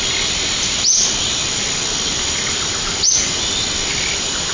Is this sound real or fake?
real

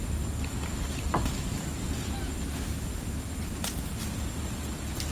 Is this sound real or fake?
real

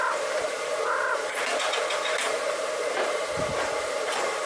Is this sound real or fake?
fake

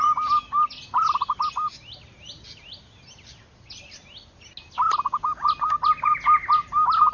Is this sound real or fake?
real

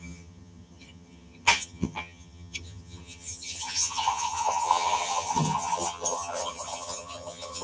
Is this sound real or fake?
fake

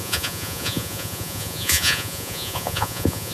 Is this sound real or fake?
fake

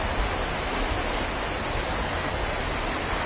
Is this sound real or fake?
real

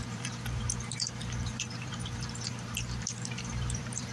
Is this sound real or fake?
fake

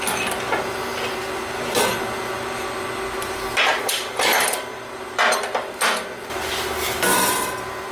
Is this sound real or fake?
real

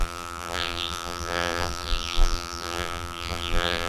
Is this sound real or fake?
fake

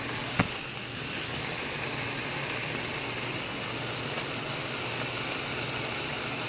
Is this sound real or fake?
real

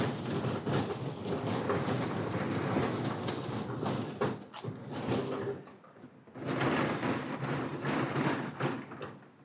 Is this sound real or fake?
real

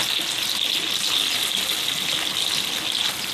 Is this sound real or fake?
real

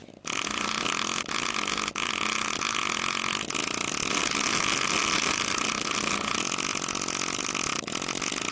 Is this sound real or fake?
real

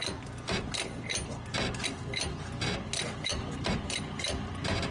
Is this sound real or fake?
real